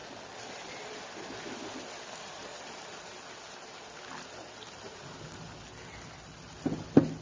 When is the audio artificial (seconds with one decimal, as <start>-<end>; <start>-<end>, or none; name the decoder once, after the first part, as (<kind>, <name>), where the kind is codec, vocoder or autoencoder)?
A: none

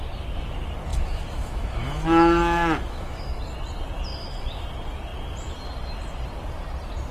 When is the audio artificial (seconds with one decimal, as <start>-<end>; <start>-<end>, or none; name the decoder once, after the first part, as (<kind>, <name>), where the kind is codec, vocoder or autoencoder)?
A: 0.9-3.4 (autoencoder, DAC-VAE); 4.1-4.6

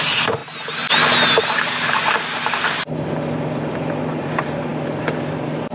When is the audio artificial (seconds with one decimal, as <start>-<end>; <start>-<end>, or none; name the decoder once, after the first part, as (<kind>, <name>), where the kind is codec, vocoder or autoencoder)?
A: 0.0-0.4 (vocoder, BigVGAN v2); 3.7-5.7

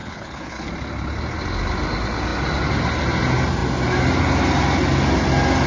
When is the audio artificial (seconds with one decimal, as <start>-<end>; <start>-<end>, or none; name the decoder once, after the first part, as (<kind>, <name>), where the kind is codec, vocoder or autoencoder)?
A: 0.0-0.7 (codec, HILCodec)

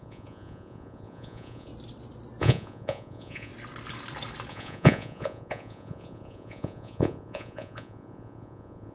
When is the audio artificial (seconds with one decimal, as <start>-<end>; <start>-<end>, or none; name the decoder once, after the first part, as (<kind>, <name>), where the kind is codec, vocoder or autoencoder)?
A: 0.0-1.7 (vocoder, Vocos); 2.4-3.5; 4.5-8.9

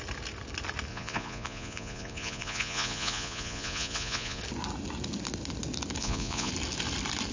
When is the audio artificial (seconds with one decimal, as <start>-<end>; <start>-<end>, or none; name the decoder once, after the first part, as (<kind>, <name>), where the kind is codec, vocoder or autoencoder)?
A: 0.9-4.4 (vocoder, Vocos); 6.0-6.5

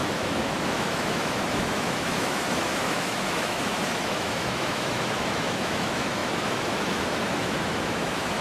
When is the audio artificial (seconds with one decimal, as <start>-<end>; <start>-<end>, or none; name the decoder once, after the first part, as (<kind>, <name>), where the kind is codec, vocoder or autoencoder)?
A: 0.0-8.4 (autoencoder, DAC-VAE)